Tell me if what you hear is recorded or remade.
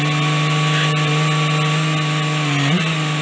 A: recorded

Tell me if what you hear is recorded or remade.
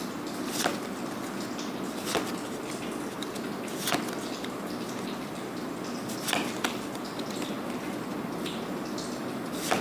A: recorded